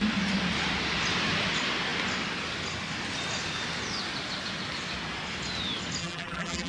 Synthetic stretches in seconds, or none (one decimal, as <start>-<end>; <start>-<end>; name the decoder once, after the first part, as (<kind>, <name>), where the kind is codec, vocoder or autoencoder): 6.0-6.7 (vocoder, BigVGAN v2)